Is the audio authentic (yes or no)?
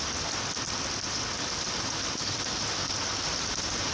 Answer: yes